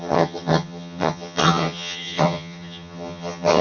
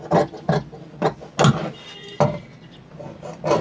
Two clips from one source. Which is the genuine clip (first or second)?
second